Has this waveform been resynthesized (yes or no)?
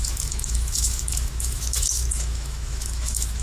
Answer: yes